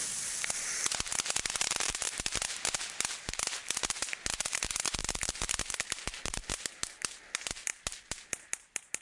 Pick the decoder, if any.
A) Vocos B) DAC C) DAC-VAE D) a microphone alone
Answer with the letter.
D